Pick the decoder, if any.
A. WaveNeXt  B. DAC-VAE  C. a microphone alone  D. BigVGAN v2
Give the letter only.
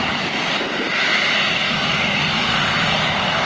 C